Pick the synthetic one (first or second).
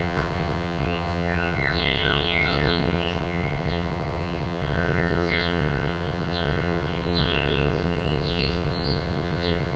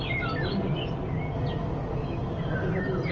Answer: first